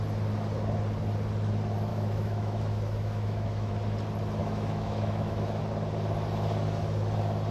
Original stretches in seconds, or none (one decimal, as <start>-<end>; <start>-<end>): 0.0-1.9; 3.7-4.4; 5.6-7.5